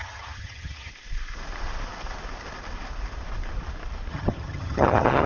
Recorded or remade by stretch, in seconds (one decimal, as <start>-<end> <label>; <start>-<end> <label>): 0.0-0.9 remade; 0.9-4.1 recorded; 4.1-5.3 remade